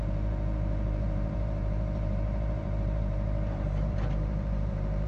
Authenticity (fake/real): fake